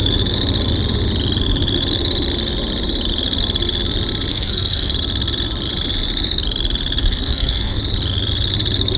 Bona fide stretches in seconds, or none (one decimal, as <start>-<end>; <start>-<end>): 0.0-4.3; 4.9-7.0; 7.8-9.0